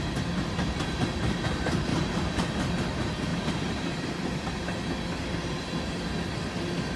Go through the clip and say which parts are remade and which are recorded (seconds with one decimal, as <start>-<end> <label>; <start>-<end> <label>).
0.0-1.9 recorded; 1.9-2.7 remade; 2.7-3.3 recorded; 3.3-4.0 remade; 4.0-7.0 recorded